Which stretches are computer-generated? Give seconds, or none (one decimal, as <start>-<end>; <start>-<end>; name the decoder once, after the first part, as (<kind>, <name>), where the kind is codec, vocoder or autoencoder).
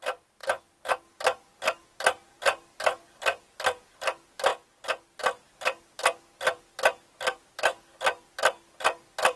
none